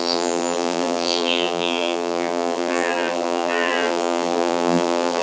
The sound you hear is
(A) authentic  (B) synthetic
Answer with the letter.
B